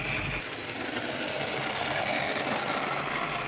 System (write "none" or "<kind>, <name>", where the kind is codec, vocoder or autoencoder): none